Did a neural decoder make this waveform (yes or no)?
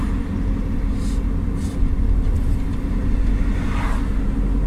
no